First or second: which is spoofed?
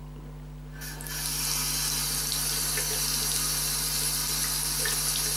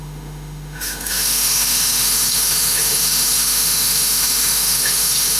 second